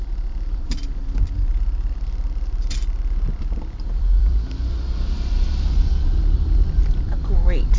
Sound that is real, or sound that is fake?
fake